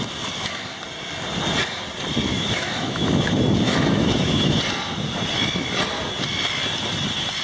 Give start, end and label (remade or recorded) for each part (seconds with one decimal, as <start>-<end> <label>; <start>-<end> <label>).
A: 0.0-2.3 recorded; 2.3-4.6 remade; 4.6-7.4 recorded